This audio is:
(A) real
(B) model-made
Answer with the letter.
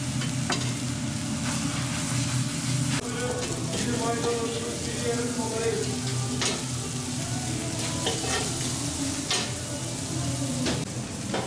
A